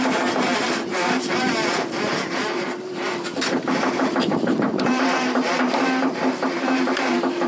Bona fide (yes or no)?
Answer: no